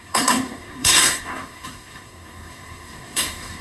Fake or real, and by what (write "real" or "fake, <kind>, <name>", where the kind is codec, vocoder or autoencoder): fake, codec, SNAC